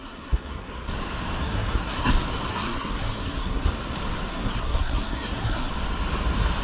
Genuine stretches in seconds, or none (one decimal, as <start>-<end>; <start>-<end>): 0.7-1.4; 2.1-2.5; 3.7-4.3; 5.7-6.6